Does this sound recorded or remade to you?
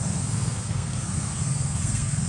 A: remade